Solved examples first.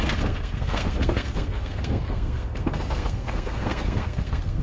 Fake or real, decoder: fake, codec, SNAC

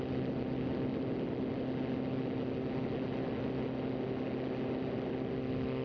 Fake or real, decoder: real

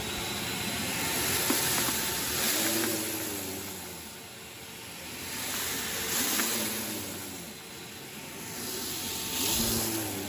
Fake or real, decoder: real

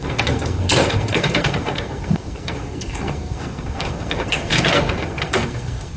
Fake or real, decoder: fake, codec, SNAC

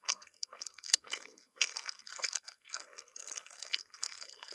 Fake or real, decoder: fake, codec, SNAC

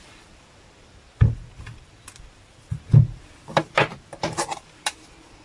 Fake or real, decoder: fake, vocoder, BigVGAN v2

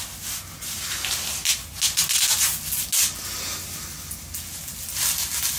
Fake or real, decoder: real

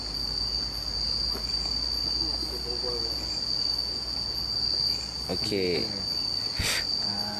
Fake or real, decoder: real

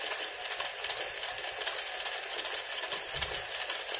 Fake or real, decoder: real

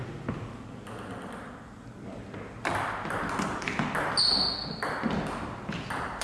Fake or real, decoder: real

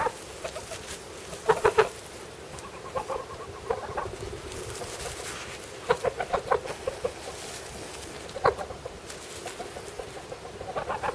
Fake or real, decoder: real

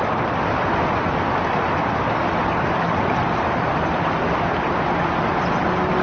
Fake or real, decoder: real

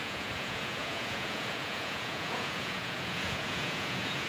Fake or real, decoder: fake, vocoder, Vocos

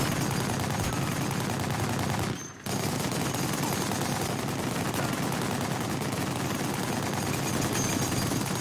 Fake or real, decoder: real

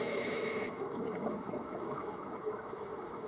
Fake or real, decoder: fake, autoencoder, DAC-VAE